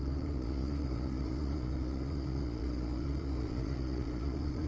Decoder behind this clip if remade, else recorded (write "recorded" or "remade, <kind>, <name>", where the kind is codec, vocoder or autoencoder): remade, vocoder, Vocos